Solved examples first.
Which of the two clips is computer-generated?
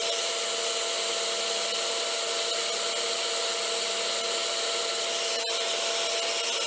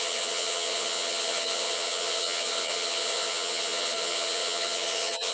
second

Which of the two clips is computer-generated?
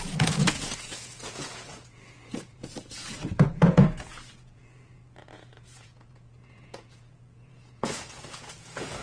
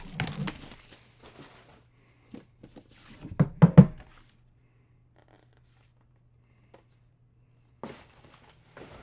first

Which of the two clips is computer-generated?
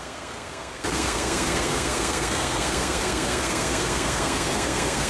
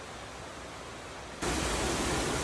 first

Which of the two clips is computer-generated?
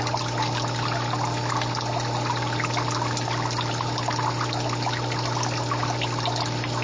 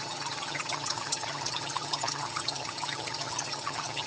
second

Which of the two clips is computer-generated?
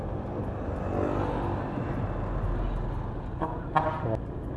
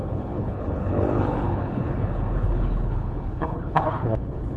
second